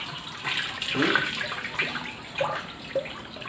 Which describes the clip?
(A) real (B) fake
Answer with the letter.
B